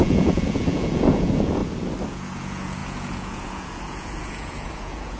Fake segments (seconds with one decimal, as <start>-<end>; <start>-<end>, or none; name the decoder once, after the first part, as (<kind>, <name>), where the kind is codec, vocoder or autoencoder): 0.0-1.6 (vocoder, Vocos); 2.1-5.2